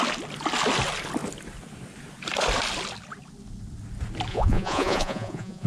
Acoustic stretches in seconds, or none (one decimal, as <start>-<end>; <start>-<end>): 0.0-4.3